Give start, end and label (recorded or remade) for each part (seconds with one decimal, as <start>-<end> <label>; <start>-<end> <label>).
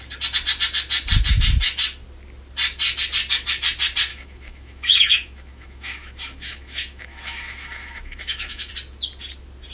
0.0-4.1 recorded; 4.1-8.7 remade; 8.7-9.7 recorded